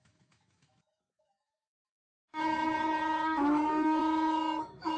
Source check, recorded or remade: remade